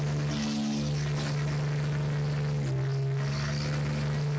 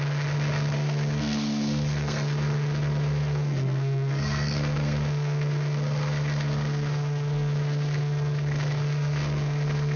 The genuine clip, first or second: first